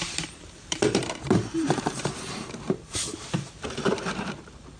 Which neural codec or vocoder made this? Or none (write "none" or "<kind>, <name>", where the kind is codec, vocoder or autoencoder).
vocoder, BigVGAN v2